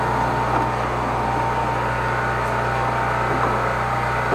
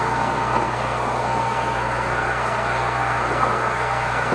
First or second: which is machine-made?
second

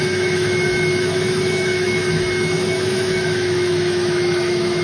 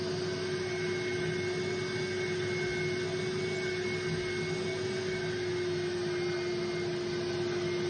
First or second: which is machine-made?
first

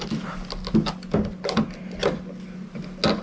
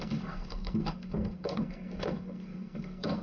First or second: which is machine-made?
second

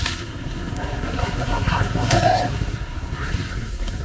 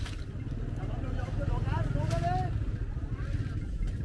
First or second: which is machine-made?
first